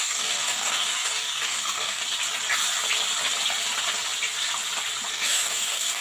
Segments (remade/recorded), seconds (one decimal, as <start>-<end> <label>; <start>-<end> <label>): 0.0-2.0 remade; 2.0-5.1 recorded; 5.1-6.0 remade